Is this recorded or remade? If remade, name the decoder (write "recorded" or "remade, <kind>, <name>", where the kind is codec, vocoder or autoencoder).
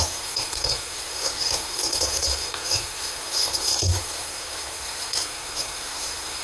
remade, codec, SNAC